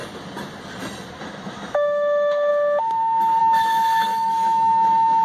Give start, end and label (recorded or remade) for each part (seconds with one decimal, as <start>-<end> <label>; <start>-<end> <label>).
0.0-1.2 recorded; 1.2-2.5 remade; 2.5-3.4 recorded; 3.4-5.2 remade